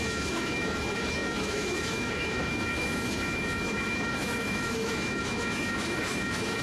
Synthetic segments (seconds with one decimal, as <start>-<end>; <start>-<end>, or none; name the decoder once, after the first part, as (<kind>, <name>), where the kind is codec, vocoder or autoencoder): 0.0-6.6 (autoencoder, DAC-VAE)